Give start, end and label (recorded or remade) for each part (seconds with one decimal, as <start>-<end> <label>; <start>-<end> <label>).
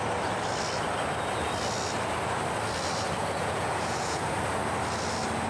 0.0-3.2 recorded; 3.2-4.2 remade; 4.2-5.5 recorded